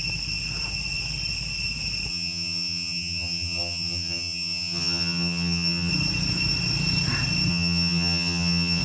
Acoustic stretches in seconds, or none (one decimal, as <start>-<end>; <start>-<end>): 0.0-2.1; 5.9-7.5

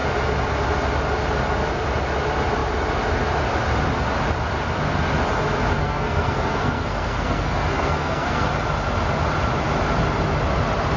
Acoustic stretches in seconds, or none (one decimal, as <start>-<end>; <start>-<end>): 0.0-5.8; 8.5-11.0

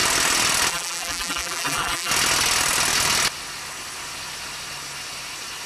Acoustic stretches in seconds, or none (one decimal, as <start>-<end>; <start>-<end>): 0.0-0.7; 2.1-5.7